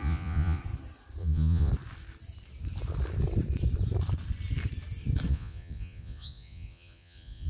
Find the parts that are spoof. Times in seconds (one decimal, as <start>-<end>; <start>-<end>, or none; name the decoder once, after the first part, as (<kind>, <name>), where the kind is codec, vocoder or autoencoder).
0.0-0.6 (vocoder, Vocos); 1.2-1.7; 5.3-7.5

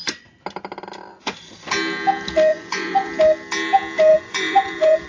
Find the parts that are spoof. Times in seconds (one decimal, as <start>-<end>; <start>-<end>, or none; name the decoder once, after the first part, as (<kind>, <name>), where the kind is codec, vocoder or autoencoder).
2.5-3.1 (vocoder, Vocos); 4.1-5.1

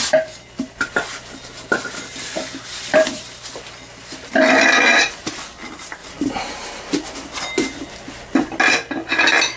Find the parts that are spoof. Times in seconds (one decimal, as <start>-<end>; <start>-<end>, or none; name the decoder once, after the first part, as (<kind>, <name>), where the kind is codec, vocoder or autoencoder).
none

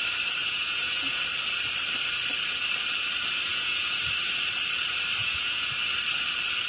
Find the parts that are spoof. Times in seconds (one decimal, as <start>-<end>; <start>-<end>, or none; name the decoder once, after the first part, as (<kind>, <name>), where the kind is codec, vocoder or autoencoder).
0.4-1.2 (vocoder, Vocos); 3.5-4.0; 5.2-5.7